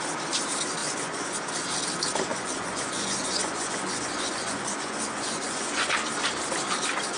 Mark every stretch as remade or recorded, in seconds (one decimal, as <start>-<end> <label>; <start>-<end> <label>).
0.0-0.8 recorded; 0.8-1.4 remade; 1.4-2.3 recorded; 2.3-5.9 remade; 5.9-7.2 recorded